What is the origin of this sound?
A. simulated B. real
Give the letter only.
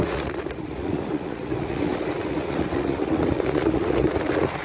A